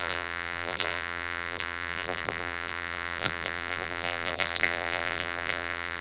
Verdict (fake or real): fake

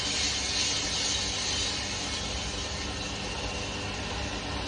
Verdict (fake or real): real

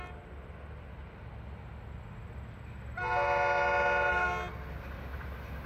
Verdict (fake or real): real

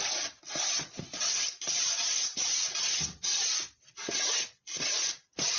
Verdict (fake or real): real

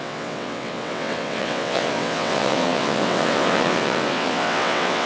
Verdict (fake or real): fake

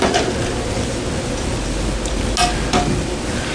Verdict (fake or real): real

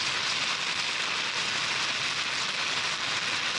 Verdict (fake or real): real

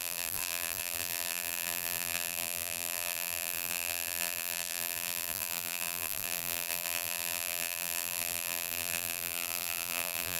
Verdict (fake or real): fake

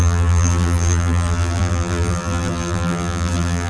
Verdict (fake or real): fake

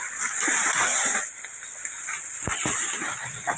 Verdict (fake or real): real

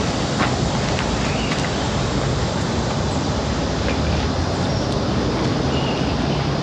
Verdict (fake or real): real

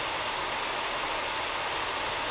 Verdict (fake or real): real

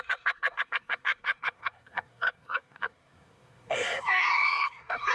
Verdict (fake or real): fake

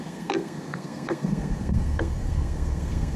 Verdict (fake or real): fake